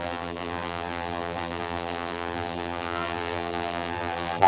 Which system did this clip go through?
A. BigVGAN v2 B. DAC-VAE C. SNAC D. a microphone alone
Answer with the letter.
A